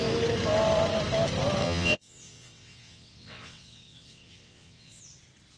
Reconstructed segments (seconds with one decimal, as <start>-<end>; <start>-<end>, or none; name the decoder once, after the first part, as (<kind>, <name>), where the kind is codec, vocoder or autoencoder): 1.6-5.0 (vocoder, WaveNeXt)